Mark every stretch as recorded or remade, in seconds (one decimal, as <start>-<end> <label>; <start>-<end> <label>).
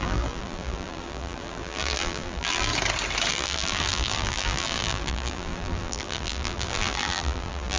0.0-2.7 remade; 2.7-3.3 recorded; 3.3-7.8 remade